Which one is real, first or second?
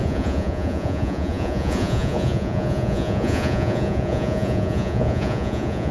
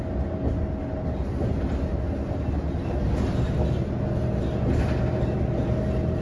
second